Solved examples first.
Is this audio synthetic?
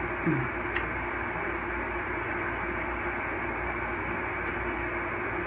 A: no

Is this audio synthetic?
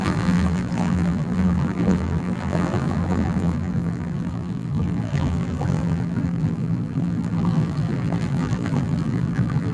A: yes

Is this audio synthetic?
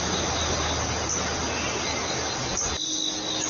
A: no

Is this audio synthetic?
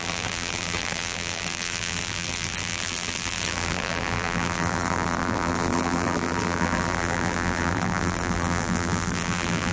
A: yes